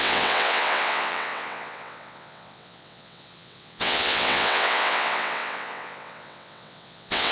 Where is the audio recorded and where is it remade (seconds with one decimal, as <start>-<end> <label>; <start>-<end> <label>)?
0.0-7.3 remade